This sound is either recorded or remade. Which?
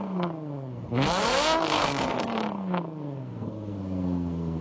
remade